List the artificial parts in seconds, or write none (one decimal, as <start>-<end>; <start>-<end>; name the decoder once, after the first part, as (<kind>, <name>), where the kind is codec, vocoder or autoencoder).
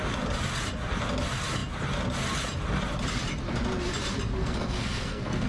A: 4.4-5.5 (codec, SNAC)